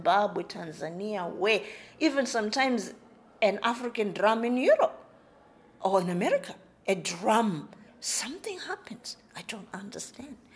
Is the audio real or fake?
real